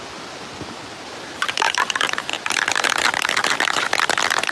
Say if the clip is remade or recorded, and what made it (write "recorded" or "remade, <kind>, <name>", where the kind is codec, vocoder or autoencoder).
recorded